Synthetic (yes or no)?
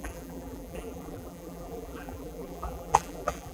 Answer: yes